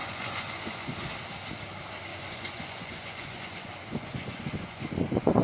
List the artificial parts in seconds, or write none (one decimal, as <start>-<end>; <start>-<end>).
0.0-1.1; 2.1-5.4